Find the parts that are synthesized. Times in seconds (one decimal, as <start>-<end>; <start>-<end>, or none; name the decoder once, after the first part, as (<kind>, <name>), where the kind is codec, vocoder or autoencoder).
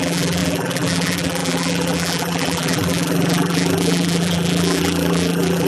0.0-5.7 (vocoder, BigVGAN v2)